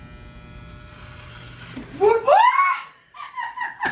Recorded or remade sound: recorded